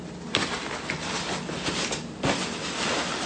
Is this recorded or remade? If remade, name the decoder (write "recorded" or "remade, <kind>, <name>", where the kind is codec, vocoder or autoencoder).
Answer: recorded